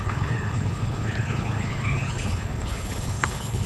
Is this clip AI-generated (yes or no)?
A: yes